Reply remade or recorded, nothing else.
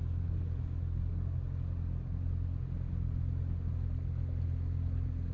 recorded